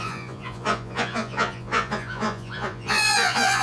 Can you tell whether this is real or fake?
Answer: fake